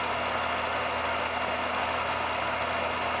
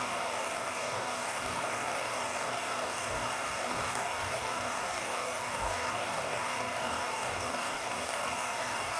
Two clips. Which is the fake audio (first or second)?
second